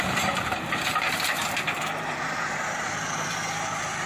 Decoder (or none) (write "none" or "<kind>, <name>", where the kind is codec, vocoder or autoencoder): vocoder, BigVGAN v2